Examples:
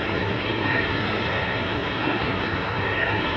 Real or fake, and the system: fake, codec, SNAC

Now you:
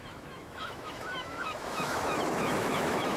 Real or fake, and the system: fake, autoencoder, DAC-VAE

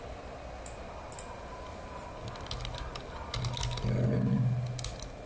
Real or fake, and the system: real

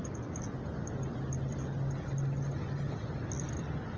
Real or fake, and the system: real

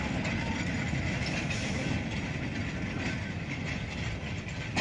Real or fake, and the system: real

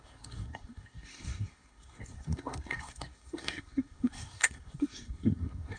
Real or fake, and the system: fake, codec, SNAC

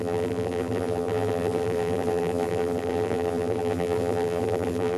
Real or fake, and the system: fake, vocoder, BigVGAN v2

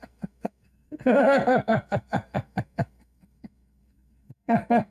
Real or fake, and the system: fake, codec, SNAC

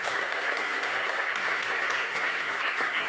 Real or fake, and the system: fake, codec, SNAC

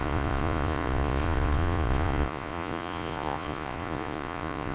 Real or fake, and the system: fake, vocoder, Vocos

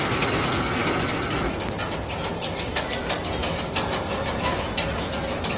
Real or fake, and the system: real